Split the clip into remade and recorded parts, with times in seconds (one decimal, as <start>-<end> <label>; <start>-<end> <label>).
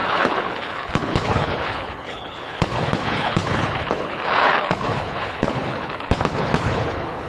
0.0-7.3 remade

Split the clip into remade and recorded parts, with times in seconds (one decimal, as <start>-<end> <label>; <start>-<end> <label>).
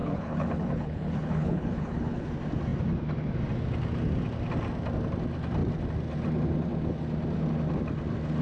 0.0-2.3 remade; 2.3-8.4 recorded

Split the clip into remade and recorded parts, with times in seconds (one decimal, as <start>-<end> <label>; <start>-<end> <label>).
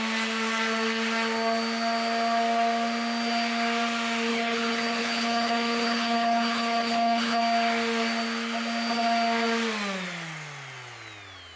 0.0-4.3 recorded; 4.3-7.4 remade; 7.4-11.6 recorded